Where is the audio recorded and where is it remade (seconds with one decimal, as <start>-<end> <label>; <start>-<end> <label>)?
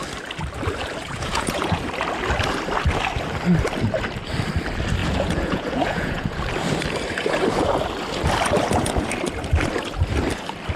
0.0-1.0 recorded; 1.0-1.8 remade; 1.8-5.0 recorded; 5.0-6.4 remade; 6.4-10.8 recorded